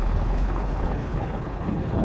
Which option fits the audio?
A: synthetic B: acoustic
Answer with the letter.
A